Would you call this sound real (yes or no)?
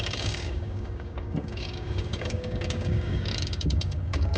no